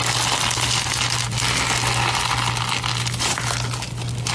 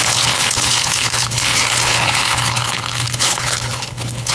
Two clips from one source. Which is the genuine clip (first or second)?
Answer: first